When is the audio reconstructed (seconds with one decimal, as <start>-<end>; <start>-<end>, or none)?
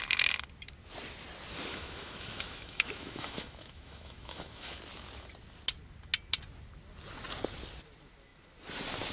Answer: 1.7-4.8